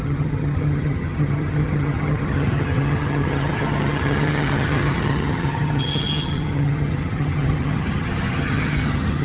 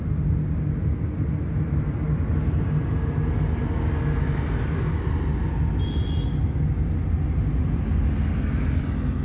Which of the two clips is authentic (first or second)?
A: second